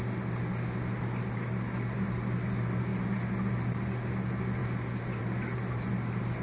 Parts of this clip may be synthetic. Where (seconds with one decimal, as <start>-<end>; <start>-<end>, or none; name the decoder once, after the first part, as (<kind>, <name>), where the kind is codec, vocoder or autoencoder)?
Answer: none